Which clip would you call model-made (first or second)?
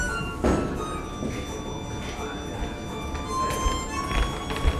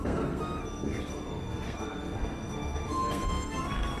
second